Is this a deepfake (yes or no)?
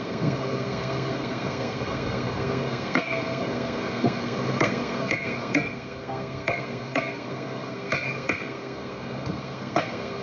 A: yes